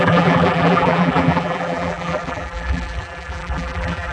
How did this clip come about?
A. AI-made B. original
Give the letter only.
A